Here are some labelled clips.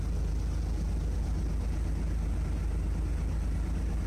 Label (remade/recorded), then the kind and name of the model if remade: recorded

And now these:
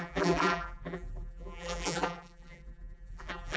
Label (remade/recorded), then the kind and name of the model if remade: remade, vocoder, BigVGAN v2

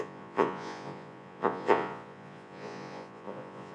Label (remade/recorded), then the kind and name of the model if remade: remade, vocoder, Vocos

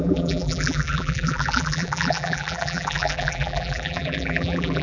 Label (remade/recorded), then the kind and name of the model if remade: remade, vocoder, BigVGAN v2